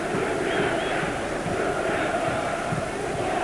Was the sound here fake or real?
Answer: real